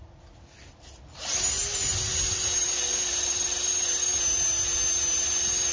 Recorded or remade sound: recorded